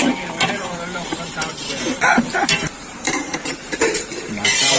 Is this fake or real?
fake